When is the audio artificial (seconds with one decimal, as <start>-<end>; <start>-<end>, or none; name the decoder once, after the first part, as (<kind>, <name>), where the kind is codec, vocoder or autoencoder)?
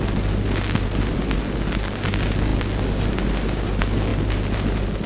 none